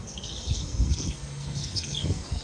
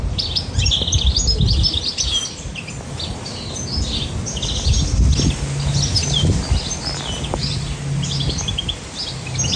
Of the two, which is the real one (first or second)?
second